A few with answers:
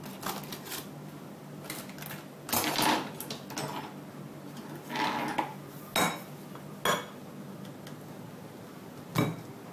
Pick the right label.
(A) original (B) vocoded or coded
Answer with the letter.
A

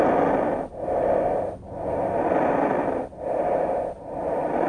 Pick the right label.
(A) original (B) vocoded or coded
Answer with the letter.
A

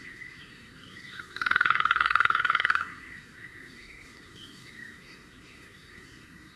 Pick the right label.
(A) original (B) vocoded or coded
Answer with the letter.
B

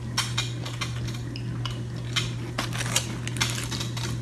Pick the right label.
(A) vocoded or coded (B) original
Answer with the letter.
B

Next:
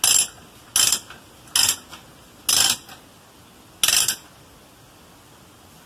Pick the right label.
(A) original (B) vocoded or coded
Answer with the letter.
A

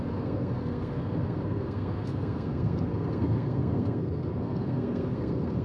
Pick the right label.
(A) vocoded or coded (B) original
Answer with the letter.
A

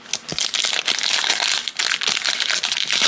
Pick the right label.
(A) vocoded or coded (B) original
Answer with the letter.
B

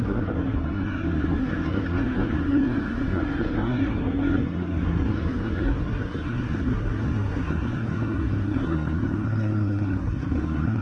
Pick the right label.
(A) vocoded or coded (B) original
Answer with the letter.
A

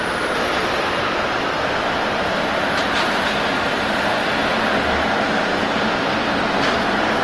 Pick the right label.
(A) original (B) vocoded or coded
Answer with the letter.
A